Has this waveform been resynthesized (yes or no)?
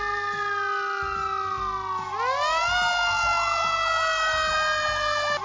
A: no